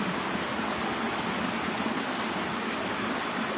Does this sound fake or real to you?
real